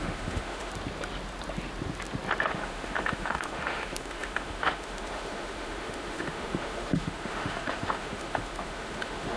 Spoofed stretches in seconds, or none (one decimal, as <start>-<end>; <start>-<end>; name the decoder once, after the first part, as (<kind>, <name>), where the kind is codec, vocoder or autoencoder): 0.0-0.7 (autoencoder, DAC-VAE); 2.5-9.4